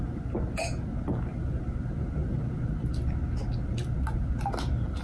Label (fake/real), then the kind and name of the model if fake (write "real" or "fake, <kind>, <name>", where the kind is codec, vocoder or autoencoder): real